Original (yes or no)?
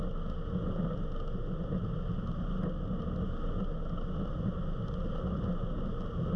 yes